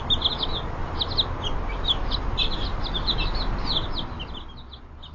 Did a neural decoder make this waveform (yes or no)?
no